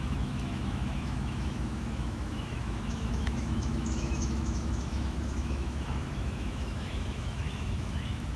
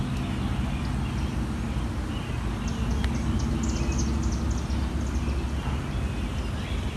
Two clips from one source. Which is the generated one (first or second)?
first